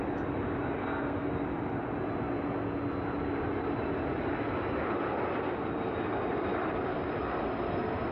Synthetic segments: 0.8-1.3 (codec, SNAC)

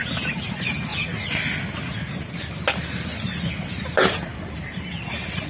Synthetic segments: 0.0-0.9 (vocoder, BigVGAN v2); 3.8-5.5

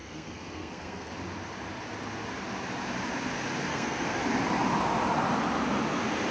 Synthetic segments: 0.0-1.1 (codec, SNAC); 3.7-4.2

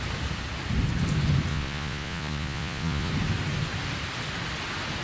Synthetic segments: 1.5-3.1 (vocoder, Vocos)

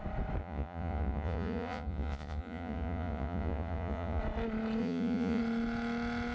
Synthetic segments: 0.4-4.2 (vocoder, Vocos); 4.8-5.4

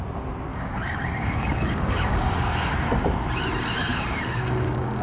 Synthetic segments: 0.5-2.7 (codec, DAC); 3.9-5.0

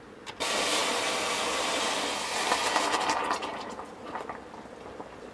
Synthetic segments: none